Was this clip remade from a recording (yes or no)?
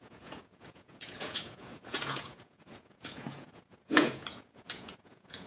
yes